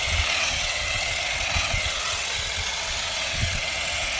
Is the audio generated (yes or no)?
yes